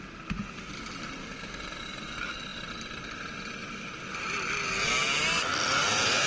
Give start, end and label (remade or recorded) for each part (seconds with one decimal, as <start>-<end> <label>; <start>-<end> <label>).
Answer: 0.0-6.3 recorded